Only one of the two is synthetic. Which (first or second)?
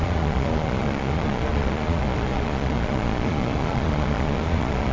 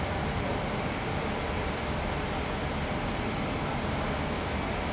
first